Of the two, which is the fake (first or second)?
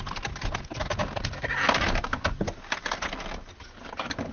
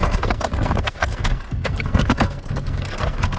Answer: second